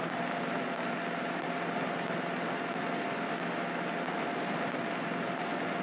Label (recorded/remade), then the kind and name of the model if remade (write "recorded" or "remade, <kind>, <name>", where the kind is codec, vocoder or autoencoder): recorded